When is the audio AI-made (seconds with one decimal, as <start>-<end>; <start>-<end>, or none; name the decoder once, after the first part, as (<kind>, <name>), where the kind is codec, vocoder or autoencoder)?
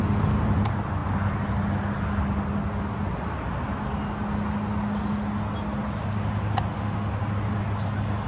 6.7-7.2 (autoencoder, DAC-VAE)